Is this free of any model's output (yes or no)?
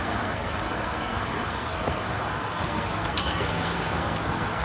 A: no